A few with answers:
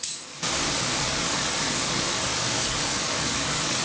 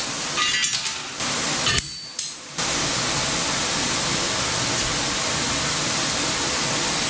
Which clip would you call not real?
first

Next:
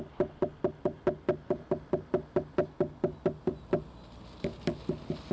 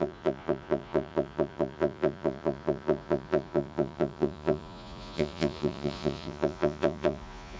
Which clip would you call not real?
second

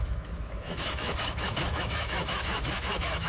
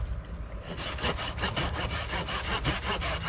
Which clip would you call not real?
first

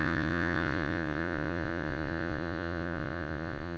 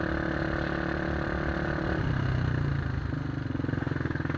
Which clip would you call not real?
first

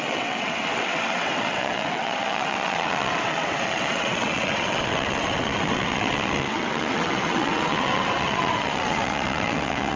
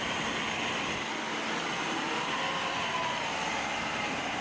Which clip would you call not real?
first